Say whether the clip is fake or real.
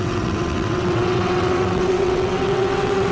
fake